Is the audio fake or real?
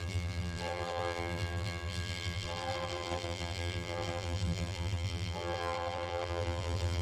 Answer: fake